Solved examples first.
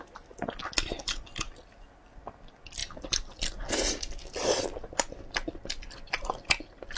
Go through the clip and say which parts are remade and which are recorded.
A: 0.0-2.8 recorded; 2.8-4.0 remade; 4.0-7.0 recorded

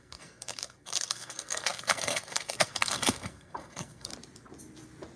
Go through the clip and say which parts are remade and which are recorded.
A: 0.0-4.1 remade; 4.1-5.2 recorded

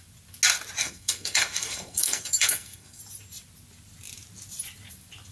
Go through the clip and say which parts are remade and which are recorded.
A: 0.0-0.8 recorded; 0.8-3.0 remade; 3.0-5.3 recorded